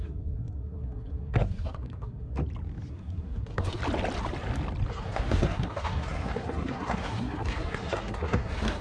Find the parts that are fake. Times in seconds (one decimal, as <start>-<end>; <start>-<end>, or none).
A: 0.0-2.4; 2.9-3.8; 4.9-8.8